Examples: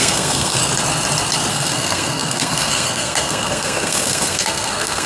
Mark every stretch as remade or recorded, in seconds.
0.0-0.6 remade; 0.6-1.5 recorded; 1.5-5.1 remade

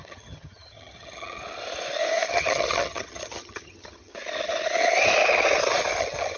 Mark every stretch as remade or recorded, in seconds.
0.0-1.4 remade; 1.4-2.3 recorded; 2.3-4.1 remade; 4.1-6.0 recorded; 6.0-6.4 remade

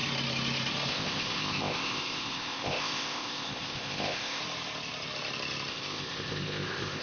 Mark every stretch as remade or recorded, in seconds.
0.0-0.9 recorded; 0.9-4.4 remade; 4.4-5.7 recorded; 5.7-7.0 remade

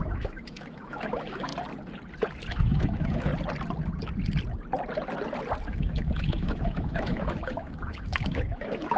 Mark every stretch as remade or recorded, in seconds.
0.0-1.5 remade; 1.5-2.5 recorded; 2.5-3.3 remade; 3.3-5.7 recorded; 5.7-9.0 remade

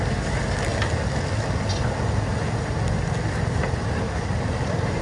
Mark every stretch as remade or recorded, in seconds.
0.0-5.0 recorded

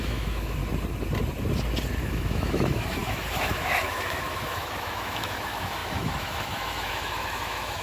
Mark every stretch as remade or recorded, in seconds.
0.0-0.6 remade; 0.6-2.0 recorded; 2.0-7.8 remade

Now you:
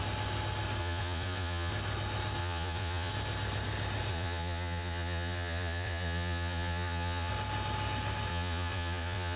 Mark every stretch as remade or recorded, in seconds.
0.0-0.8 recorded; 0.8-1.7 remade; 1.7-2.4 recorded; 2.4-3.1 remade; 3.1-4.1 recorded; 4.1-7.3 remade; 7.3-8.3 recorded; 8.3-9.4 remade

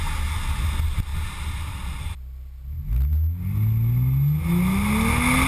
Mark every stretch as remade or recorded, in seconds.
0.0-5.5 recorded